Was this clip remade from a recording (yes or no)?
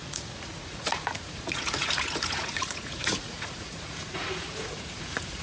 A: yes